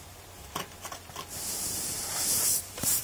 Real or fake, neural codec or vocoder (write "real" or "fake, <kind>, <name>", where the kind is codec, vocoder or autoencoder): fake, vocoder, BigVGAN v2